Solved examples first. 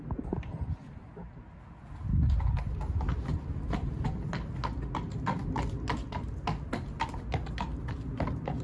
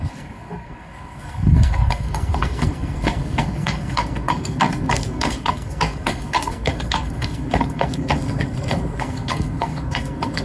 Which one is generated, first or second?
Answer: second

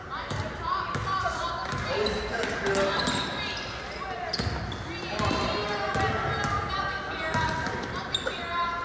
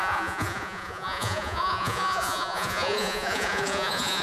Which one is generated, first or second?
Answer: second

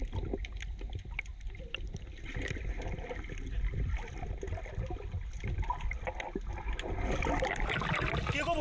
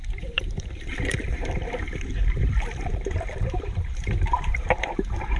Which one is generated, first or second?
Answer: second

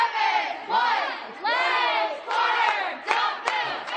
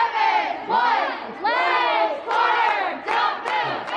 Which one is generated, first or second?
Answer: first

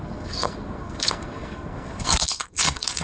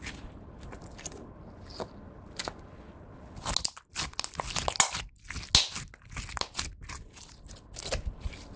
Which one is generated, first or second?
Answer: first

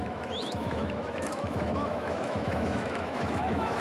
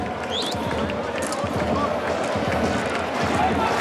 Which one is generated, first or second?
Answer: first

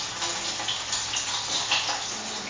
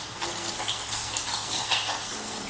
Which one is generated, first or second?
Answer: second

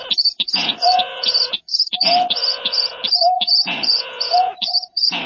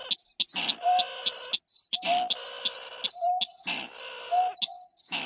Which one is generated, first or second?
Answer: first